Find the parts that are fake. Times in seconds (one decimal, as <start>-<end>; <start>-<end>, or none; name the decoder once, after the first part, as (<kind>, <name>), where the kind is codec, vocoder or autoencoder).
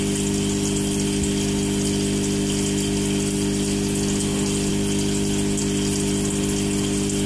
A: none